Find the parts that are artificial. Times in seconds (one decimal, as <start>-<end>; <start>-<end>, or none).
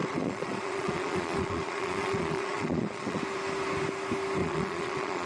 0.0-3.2; 4.4-5.3